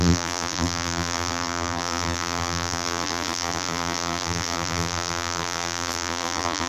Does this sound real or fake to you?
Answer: fake